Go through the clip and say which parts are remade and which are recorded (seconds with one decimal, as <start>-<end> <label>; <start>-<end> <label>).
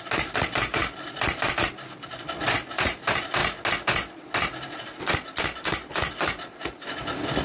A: 0.0-7.4 recorded